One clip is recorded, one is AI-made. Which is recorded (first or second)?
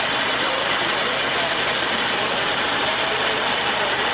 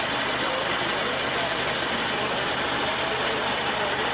second